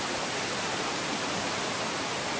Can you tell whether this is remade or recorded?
recorded